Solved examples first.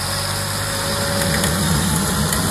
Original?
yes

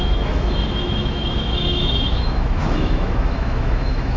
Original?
no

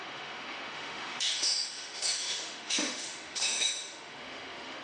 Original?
no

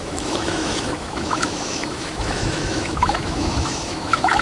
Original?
no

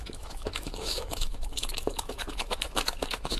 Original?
no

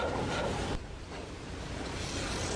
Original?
yes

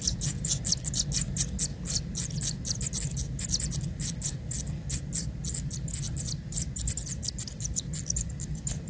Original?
yes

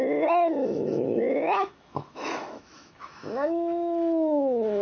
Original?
no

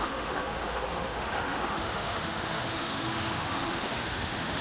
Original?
no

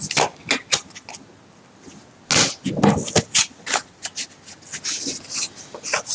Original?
yes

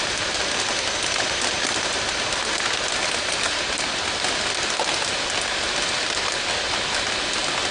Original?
yes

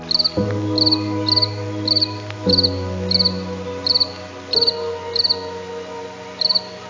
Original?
yes